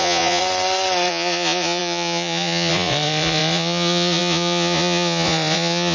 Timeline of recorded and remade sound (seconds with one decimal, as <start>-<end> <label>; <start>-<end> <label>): 0.0-0.4 remade; 0.4-1.1 recorded; 1.1-5.9 remade